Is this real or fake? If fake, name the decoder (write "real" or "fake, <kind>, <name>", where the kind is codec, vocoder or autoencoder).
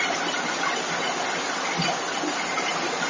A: real